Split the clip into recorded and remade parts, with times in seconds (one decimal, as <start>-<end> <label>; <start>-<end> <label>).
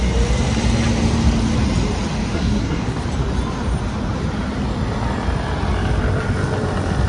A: 0.0-2.3 recorded; 2.3-3.0 remade; 3.0-7.1 recorded